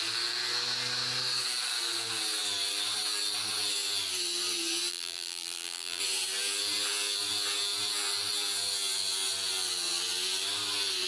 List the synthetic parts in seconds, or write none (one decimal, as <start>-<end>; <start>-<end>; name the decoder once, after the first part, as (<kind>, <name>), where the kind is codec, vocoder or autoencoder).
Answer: 4.9-6.0 (vocoder, BigVGAN v2)